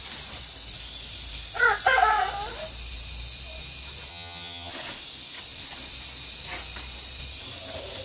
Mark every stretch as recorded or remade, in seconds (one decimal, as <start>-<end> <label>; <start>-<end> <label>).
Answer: 0.0-4.1 recorded; 4.1-4.7 remade; 4.7-8.0 recorded